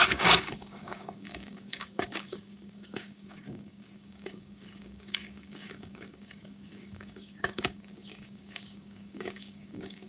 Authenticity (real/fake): fake